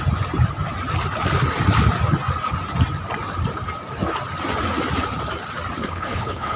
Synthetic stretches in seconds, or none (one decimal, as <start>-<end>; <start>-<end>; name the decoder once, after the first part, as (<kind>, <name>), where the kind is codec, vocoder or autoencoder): 5.8-6.6 (codec, HILCodec)